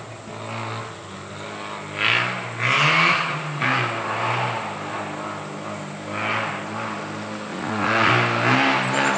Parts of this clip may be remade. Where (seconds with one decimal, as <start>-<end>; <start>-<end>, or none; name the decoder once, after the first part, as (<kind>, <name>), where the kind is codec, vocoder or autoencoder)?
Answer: 7.5-8.1 (vocoder, Vocos)